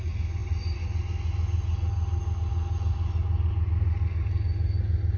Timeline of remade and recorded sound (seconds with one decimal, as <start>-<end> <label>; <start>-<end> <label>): 0.0-5.2 recorded